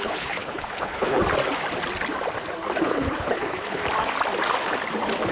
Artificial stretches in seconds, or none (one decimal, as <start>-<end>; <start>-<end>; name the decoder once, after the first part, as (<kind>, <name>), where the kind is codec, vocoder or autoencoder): 0.0-1.2 (codec, HILCodec); 2.8-3.8